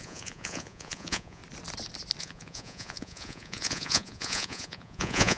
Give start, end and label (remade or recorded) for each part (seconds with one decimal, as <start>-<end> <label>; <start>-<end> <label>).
0.0-1.4 remade; 1.4-2.2 recorded; 2.2-5.4 remade